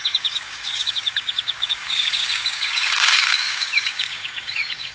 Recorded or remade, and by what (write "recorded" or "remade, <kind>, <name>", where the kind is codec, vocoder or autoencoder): remade, codec, DAC